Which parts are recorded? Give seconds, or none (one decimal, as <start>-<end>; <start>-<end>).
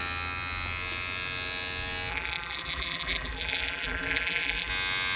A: 0.0-2.1; 4.7-5.2